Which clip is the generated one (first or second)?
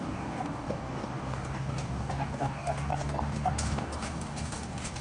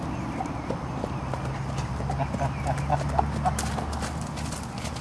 first